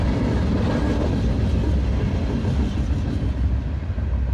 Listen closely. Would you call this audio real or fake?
real